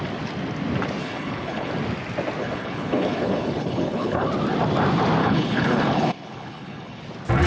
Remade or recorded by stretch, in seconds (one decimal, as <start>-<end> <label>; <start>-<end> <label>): 0.0-1.0 recorded; 1.0-1.7 remade; 1.7-2.4 recorded; 2.4-4.3 remade; 4.3-5.2 recorded; 5.2-7.0 remade; 7.0-7.5 recorded